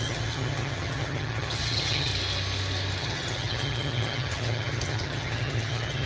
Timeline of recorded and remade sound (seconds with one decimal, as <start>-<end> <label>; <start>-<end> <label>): 0.0-2.1 remade; 2.1-3.0 recorded; 3.0-6.1 remade